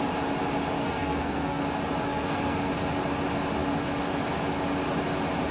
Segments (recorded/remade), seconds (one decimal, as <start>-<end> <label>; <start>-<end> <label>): 0.0-0.8 recorded; 0.8-1.6 remade; 1.6-2.1 recorded; 2.1-2.7 remade; 2.7-5.5 recorded